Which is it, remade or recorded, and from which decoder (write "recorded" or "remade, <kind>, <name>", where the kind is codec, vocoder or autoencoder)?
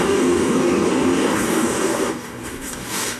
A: remade, codec, DAC